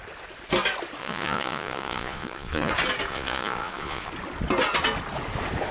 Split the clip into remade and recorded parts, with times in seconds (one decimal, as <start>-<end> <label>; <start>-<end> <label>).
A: 0.0-1.0 recorded; 1.0-2.7 remade; 2.7-3.1 recorded; 3.1-4.1 remade; 4.1-5.7 recorded